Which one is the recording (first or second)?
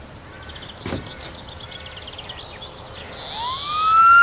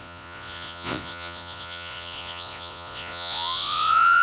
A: first